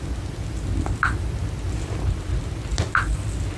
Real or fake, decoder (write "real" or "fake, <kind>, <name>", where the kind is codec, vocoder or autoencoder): real